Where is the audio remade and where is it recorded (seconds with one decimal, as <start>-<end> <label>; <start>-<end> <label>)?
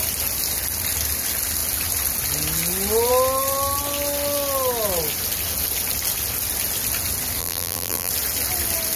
0.0-7.4 recorded; 7.4-8.1 remade; 8.1-9.0 recorded